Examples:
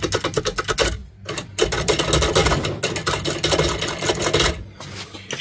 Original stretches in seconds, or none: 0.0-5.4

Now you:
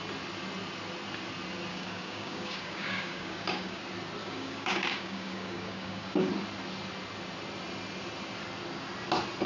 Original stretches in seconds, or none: 0.0-1.7; 3.8-4.2; 6.3-9.5

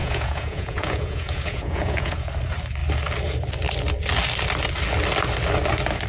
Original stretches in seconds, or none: 2.3-6.1

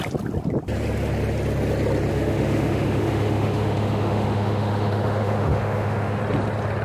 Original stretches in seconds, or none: 0.0-2.1; 6.2-6.8

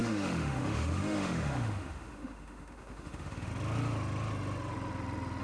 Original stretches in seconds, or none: 3.5-5.4

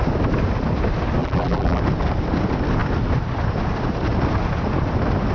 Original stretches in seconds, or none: 0.0-1.2; 1.8-5.3

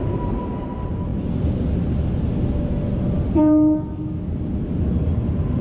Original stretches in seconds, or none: 1.1-4.5